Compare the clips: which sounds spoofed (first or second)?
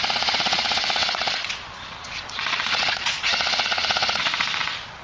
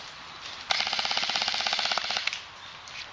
first